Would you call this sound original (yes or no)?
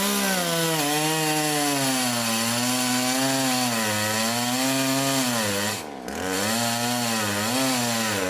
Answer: yes